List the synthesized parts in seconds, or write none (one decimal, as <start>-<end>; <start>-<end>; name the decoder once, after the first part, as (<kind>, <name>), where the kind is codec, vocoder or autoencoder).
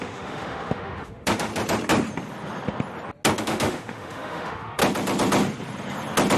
0.0-1.5 (autoencoder, DAC-VAE); 3.4-4.8